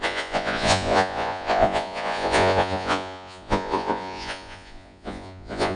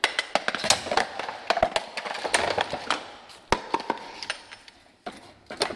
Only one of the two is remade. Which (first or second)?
first